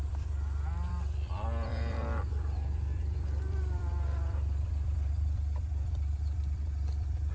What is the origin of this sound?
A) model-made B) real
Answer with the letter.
A